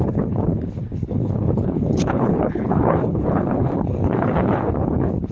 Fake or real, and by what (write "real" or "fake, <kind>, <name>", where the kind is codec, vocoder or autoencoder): fake, codec, HILCodec